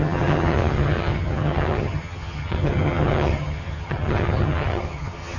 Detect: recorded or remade remade